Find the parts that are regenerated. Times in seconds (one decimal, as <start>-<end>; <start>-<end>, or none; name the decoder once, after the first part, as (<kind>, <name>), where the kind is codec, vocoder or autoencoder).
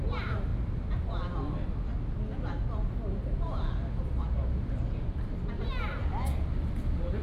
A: none